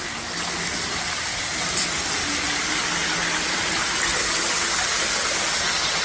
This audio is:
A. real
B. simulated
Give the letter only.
A